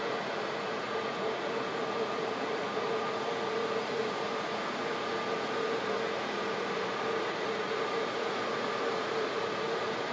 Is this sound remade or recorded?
remade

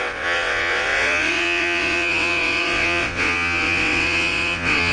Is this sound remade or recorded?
remade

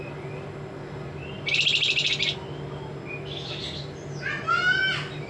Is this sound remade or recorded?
recorded